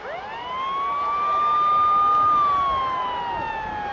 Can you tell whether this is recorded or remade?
recorded